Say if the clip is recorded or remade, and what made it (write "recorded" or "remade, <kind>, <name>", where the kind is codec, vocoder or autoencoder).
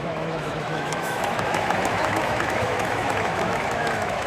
remade, autoencoder, DAC-VAE